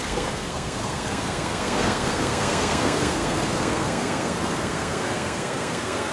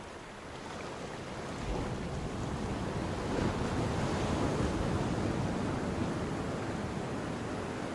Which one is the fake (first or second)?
first